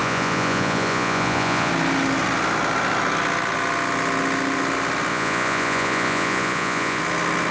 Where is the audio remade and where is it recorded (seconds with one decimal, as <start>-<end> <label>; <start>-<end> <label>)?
0.0-1.7 remade; 1.7-5.1 recorded; 5.1-7.0 remade; 7.0-7.5 recorded